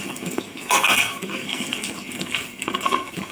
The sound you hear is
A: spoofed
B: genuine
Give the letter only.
A